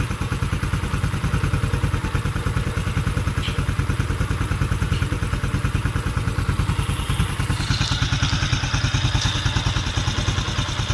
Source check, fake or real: real